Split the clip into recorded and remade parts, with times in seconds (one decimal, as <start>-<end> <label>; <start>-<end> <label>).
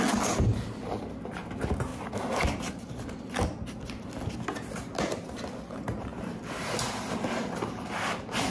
0.0-8.5 recorded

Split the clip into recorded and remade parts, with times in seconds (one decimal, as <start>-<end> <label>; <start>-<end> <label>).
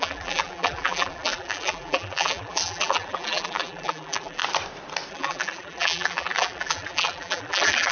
0.0-4.4 remade; 4.4-5.1 recorded; 5.1-7.9 remade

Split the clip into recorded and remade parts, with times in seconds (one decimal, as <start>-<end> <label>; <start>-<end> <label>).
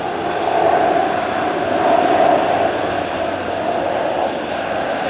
0.0-5.1 recorded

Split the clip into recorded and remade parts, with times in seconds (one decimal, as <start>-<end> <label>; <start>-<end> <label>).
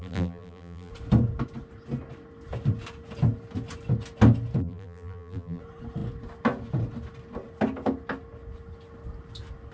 0.0-0.9 remade; 0.9-4.6 recorded; 4.6-5.6 remade; 5.6-9.7 recorded